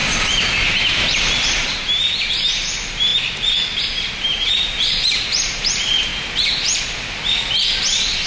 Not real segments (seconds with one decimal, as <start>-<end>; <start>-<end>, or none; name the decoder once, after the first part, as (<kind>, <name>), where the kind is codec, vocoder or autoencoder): 0.7-3.1 (vocoder, BigVGAN v2); 3.8-6.1; 7.8-8.3